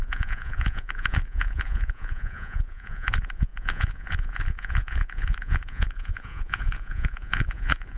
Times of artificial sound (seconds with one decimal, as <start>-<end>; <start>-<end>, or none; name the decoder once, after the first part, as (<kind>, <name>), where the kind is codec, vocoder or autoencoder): 0.0-8.0 (vocoder, Vocos)